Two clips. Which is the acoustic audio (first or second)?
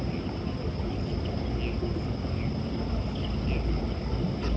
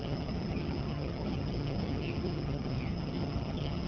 first